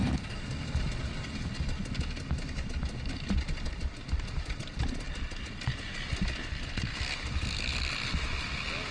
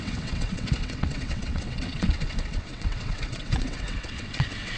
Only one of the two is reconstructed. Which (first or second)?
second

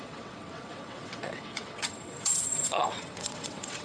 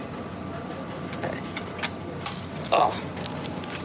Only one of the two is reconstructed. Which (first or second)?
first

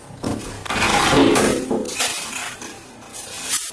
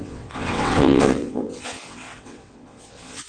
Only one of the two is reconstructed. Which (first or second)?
second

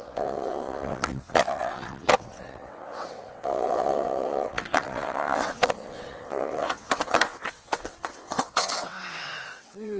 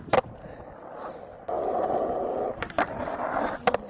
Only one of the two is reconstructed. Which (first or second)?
first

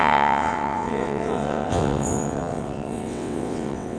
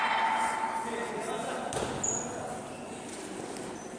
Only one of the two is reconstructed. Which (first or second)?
first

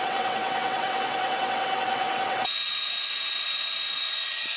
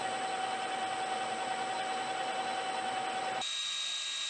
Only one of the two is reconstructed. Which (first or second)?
first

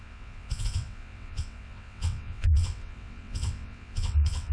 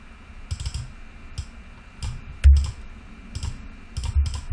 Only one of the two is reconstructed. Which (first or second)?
first